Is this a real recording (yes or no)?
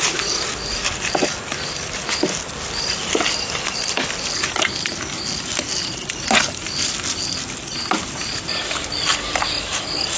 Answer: yes